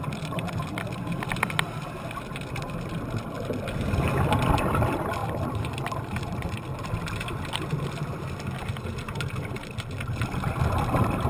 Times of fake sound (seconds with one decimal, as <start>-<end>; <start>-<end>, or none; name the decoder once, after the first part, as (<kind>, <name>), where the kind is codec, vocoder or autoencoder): 5.2-6.5 (vocoder, BigVGAN v2)